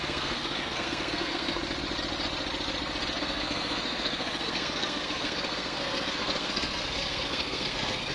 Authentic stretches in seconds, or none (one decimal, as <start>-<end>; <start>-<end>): 1.6-3.2